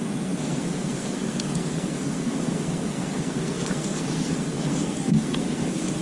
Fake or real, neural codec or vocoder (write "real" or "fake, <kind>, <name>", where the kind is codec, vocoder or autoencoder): fake, codec, SNAC